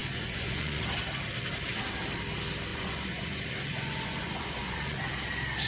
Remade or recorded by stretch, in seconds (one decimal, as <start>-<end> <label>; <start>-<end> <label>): 0.0-0.8 remade; 0.8-2.7 recorded; 2.7-5.1 remade; 5.1-5.7 recorded